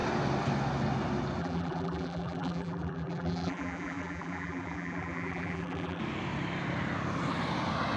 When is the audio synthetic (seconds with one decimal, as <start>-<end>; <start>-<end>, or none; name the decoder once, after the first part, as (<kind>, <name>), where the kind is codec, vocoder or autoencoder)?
1.4-6.0 (vocoder, BigVGAN v2)